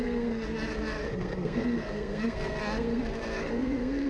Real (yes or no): no